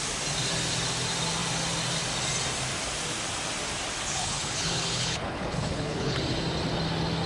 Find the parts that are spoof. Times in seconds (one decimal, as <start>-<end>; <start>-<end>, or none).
4.1-6.2